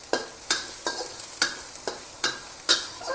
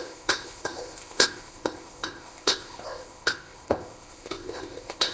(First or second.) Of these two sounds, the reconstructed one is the second